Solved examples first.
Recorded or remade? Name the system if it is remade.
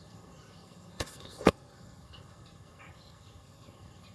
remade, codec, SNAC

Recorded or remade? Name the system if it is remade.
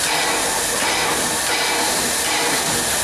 recorded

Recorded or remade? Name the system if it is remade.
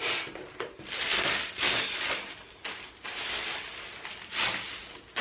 recorded